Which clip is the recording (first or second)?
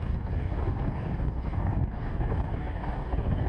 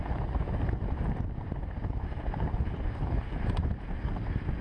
second